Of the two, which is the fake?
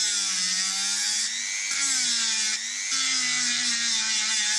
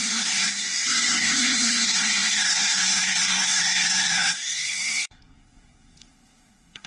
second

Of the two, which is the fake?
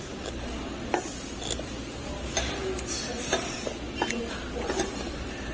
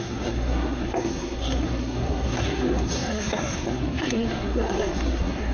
second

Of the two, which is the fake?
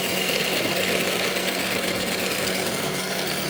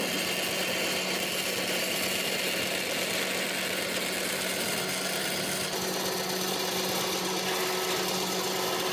first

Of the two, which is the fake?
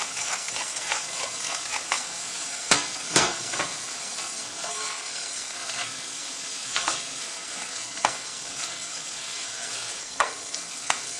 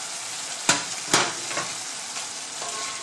first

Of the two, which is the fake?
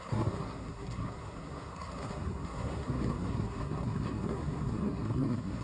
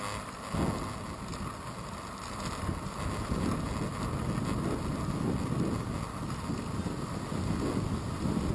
first